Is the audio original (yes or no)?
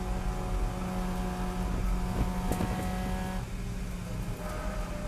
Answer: yes